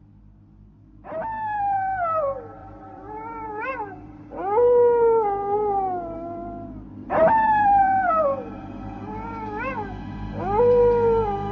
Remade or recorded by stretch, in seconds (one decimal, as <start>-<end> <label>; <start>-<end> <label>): 0.0-2.6 recorded; 2.6-4.3 remade; 4.3-7.0 recorded; 7.0-8.1 remade; 8.1-11.5 recorded